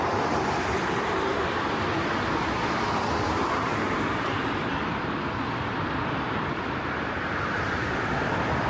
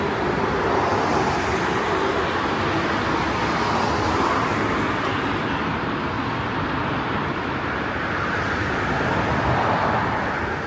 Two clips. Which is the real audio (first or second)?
second